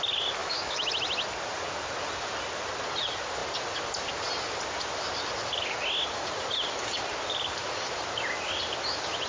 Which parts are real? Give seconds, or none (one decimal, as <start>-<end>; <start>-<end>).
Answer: 0.0-0.4; 0.9-9.3